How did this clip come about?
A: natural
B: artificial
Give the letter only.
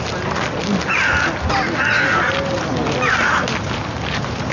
A